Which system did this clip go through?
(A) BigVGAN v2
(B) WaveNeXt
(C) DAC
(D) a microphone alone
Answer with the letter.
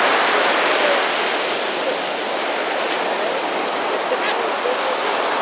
D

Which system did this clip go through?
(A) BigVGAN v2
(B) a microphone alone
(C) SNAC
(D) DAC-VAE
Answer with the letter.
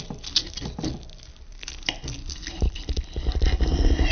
B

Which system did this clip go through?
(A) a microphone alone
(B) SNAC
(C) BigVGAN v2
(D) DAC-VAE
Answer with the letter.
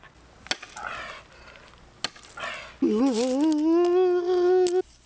A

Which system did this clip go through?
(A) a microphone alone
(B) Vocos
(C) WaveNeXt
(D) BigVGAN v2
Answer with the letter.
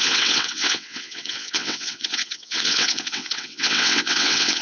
C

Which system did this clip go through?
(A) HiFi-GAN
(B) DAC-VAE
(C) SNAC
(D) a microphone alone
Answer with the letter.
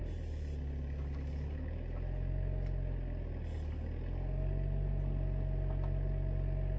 D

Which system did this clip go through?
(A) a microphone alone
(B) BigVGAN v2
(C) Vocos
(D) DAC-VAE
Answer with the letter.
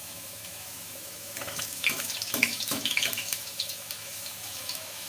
D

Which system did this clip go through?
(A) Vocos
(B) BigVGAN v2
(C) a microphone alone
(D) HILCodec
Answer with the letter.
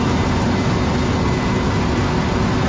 C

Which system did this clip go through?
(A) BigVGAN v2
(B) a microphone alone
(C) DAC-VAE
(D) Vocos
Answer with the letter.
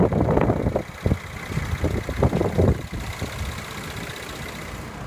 B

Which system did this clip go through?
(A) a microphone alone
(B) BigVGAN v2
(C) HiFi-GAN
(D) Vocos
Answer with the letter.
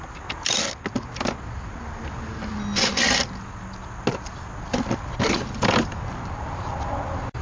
A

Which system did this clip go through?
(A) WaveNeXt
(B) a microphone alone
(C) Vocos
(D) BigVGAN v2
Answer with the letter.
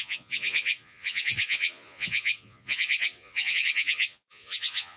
C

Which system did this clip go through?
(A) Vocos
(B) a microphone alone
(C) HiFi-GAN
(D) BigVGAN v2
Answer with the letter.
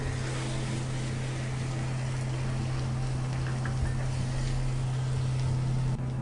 B